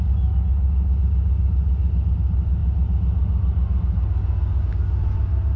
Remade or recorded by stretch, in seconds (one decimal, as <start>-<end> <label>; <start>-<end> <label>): 0.0-5.6 recorded